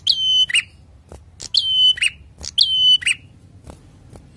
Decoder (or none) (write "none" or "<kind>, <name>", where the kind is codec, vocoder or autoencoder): none